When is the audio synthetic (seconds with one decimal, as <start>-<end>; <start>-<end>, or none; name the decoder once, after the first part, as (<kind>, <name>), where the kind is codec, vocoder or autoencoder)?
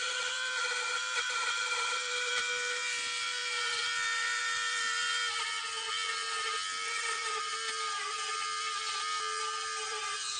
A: 0.0-5.2 (vocoder, BigVGAN v2); 7.1-7.5; 9.4-10.4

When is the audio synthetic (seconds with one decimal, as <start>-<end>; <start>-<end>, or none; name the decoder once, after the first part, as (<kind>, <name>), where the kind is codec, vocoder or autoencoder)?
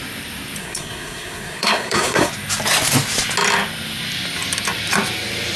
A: 0.6-2.3 (codec, SNAC)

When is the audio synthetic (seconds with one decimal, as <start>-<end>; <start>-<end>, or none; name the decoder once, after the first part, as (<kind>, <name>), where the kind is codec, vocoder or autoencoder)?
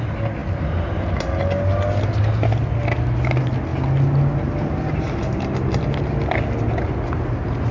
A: none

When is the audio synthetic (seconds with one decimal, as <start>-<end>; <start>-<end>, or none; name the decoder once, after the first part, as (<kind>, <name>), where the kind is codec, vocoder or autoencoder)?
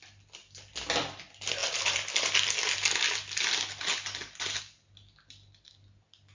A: none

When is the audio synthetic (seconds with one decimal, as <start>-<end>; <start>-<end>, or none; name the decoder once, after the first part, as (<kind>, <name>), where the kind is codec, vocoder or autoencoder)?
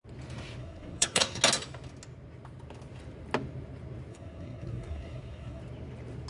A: 0.6-1.4 (codec, SNAC); 4.1-5.6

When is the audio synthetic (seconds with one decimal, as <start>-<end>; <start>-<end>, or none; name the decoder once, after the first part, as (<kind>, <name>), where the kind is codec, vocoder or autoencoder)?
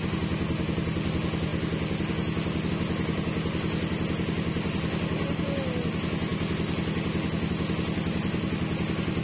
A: none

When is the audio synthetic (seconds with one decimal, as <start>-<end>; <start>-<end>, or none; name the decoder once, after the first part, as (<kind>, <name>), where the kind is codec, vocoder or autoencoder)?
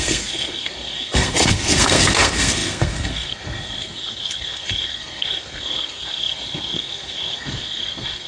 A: 0.0-8.3 (codec, SNAC)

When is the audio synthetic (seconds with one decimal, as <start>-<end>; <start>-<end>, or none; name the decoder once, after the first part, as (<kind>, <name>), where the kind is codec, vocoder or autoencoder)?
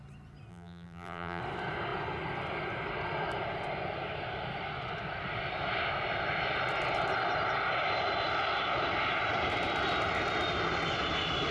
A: 0.5-1.4 (vocoder, BigVGAN v2)